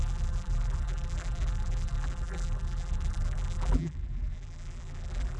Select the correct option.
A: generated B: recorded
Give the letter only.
A